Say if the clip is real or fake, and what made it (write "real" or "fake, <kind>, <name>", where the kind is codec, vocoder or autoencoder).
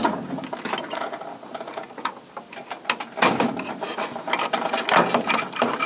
real